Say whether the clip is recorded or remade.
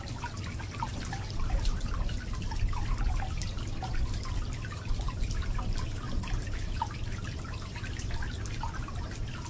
recorded